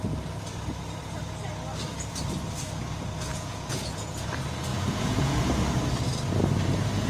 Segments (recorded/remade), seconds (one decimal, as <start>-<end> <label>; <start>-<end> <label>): 0.0-3.3 recorded; 3.3-4.3 remade; 4.3-4.7 recorded; 4.7-5.4 remade; 5.4-7.1 recorded